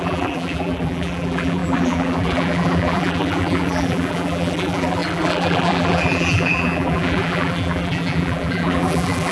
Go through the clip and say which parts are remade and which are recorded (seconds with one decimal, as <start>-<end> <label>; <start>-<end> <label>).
0.0-9.3 remade